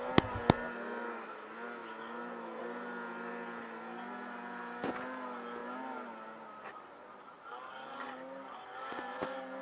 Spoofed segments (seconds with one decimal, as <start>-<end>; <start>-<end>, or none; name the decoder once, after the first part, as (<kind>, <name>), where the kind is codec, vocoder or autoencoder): none